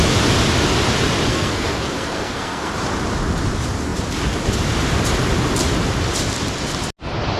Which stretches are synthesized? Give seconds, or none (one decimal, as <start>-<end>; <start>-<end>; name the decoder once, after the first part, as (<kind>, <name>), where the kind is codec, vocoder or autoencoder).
1.3-2.7 (codec, SNAC)